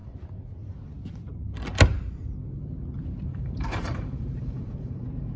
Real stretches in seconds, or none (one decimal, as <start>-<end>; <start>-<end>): 0.0-3.2